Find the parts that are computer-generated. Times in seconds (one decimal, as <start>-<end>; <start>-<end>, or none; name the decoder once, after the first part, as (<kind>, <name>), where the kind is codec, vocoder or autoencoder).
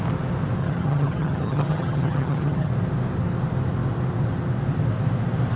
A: 0.6-2.7 (vocoder, HiFi-GAN)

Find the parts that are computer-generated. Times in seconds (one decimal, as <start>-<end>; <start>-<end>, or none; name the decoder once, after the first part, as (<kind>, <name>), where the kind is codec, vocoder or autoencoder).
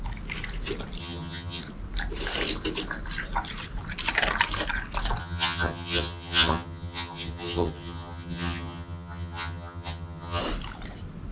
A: 1.0-1.6 (vocoder, HiFi-GAN); 5.2-10.4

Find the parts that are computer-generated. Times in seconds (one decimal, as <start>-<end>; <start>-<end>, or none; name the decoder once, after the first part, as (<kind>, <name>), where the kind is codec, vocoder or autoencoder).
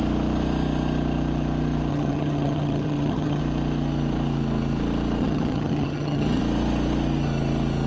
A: 1.9-3.4 (vocoder, HiFi-GAN); 5.2-6.4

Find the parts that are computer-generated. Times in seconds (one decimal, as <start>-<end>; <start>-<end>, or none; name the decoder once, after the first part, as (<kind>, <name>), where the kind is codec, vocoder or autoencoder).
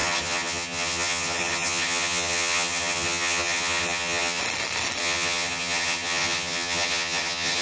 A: 0.0-4.4 (vocoder, HiFi-GAN); 5.0-7.6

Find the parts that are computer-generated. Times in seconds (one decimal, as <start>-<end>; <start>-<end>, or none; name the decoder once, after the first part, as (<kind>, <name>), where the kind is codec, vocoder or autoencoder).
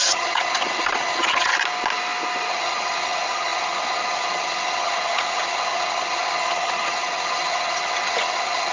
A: 0.0-1.5 (vocoder, HiFi-GAN); 2.5-8.7